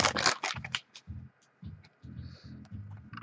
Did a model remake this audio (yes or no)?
no